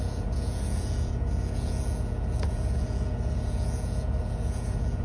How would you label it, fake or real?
fake